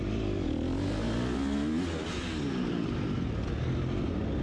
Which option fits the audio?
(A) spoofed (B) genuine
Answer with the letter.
B